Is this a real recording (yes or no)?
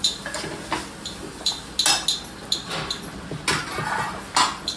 yes